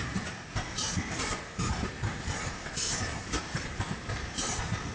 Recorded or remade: remade